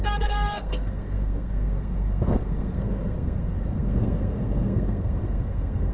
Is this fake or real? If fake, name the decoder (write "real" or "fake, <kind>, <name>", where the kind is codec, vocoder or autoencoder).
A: fake, codec, SNAC